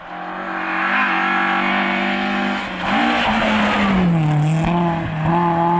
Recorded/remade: recorded